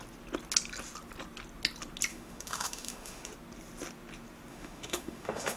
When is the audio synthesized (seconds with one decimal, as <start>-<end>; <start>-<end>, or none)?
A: 2.1-3.3; 4.5-5.6